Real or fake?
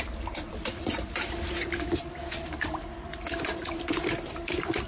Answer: fake